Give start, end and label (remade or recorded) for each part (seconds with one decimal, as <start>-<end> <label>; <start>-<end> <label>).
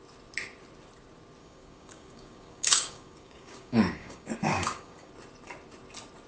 0.0-1.4 recorded; 1.4-5.1 remade; 5.1-6.3 recorded